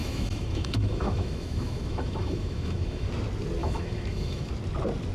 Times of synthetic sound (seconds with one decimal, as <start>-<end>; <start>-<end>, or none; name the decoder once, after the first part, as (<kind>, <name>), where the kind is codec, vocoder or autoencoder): 0.0-3.1 (autoencoder, DAC-VAE); 3.6-4.5